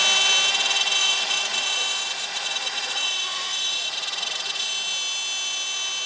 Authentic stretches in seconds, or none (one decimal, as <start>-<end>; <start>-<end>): 0.0-1.0; 4.7-6.1